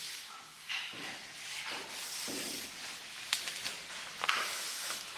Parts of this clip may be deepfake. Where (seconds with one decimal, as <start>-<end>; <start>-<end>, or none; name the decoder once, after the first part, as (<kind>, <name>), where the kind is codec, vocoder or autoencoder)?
0.0-1.2 (autoencoder, DAC-VAE); 4.3-5.2